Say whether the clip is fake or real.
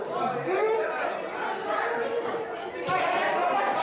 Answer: real